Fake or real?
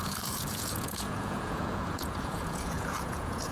fake